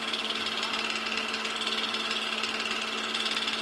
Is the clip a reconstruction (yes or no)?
no